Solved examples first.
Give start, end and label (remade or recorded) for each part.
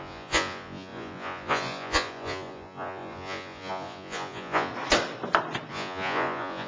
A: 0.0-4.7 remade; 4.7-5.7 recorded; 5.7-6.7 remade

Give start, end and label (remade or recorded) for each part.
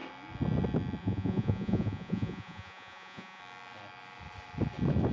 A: 0.0-1.0 recorded; 1.0-3.4 remade; 3.4-5.1 recorded